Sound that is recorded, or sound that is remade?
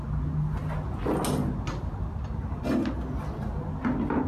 recorded